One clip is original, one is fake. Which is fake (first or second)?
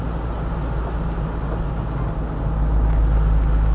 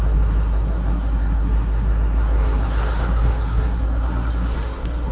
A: second